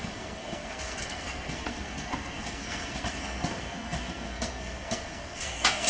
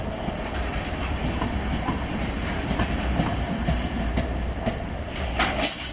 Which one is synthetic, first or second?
first